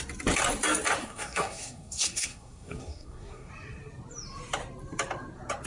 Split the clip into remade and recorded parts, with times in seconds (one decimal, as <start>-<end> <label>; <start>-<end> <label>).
0.0-1.0 recorded; 1.0-3.5 remade; 3.5-5.7 recorded